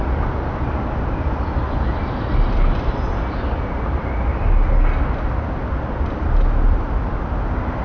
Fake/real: real